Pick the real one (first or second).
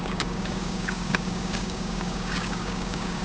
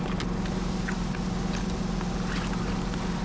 second